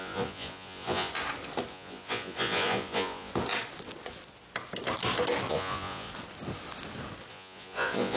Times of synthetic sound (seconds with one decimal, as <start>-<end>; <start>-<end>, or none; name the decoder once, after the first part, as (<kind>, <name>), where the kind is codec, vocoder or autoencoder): 0.0-1.1 (vocoder, Vocos); 1.7-3.3; 5.5-6.1; 7.3-8.2